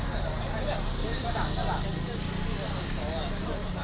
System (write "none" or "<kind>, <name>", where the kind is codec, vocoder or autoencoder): none